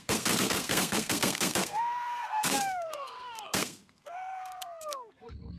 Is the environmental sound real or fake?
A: fake